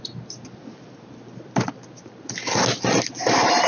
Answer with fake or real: real